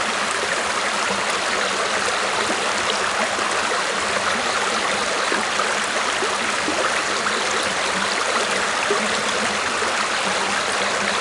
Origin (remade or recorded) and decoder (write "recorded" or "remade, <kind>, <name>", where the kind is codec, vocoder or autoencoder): recorded